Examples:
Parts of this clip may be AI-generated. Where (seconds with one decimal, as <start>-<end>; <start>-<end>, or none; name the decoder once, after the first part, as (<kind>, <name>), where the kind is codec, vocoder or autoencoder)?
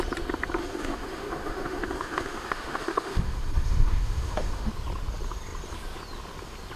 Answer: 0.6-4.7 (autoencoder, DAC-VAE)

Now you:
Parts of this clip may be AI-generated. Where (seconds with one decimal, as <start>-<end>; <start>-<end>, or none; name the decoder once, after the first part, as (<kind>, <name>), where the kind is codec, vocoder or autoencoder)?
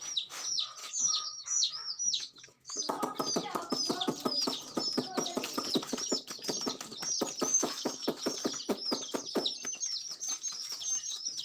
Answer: 0.8-3.0 (autoencoder, DAC-VAE); 7.5-8.2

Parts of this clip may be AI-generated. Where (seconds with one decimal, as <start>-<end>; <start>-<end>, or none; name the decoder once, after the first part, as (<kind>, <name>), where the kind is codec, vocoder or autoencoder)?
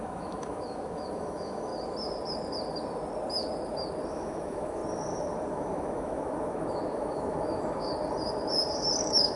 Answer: 0.0-1.7 (autoencoder, DAC-VAE); 4.1-4.8; 5.5-7.9; 9.0-9.4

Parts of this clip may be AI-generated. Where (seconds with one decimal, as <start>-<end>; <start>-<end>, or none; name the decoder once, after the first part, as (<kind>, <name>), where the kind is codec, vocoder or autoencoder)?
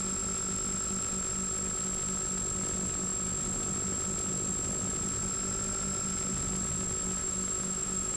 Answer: 7.2-8.2 (autoencoder, DAC-VAE)